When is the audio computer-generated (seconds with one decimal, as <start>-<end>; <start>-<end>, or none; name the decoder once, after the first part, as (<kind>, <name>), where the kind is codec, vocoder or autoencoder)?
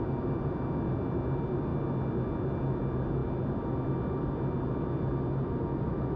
none